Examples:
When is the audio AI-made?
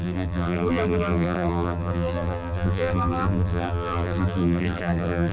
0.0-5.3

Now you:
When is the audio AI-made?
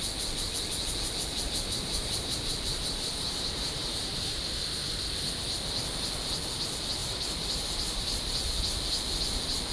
1.3-4.9; 7.0-8.3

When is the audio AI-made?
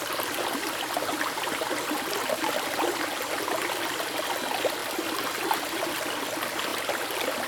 4.8-6.1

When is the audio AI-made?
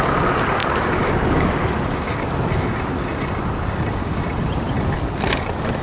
0.6-1.6